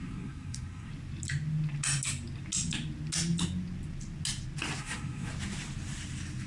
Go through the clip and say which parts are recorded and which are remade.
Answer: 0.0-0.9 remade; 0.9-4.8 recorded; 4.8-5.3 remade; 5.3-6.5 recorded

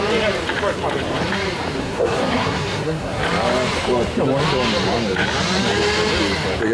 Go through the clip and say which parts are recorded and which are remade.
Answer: 0.0-1.8 recorded; 1.8-3.2 remade; 3.2-6.7 recorded

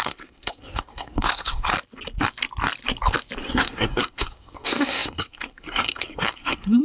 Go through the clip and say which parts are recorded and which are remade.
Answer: 0.0-1.7 remade; 1.7-3.5 recorded; 3.5-6.8 remade

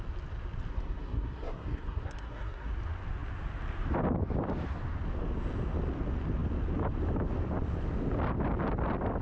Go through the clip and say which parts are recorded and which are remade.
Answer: 0.0-0.7 recorded; 0.7-2.7 remade; 2.7-9.2 recorded